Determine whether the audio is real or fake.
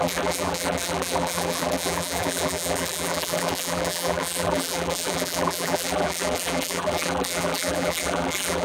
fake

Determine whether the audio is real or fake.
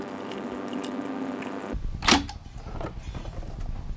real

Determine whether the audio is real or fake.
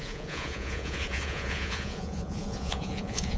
fake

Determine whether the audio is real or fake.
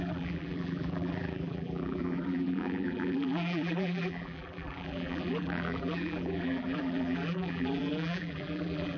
fake